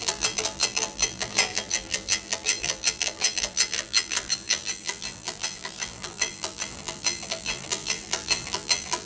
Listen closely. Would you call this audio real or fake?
fake